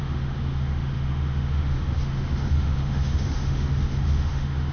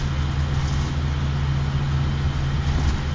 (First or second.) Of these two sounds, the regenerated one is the first